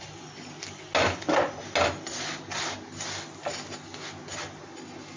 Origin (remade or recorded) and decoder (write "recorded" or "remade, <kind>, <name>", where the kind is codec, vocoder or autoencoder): recorded